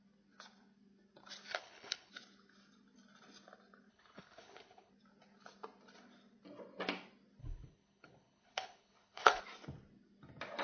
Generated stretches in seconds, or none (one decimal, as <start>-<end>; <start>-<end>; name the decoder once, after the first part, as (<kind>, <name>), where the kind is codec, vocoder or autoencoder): 1.5-2.1 (codec, HILCodec); 3.9-4.9; 7.4-9.4